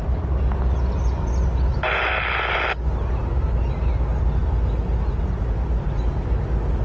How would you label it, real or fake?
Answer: real